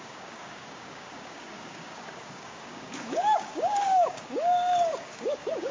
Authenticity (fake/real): fake